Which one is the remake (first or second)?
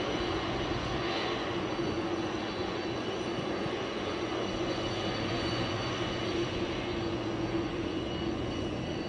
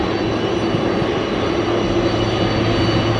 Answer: first